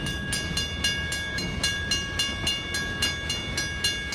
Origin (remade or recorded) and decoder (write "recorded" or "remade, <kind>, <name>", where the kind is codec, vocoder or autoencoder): recorded